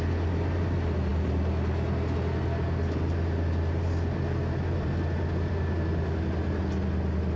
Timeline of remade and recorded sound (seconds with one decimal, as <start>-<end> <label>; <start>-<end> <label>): 0.0-7.4 recorded